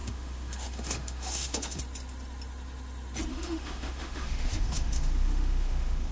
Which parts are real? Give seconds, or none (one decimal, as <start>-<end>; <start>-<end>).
1.8-3.3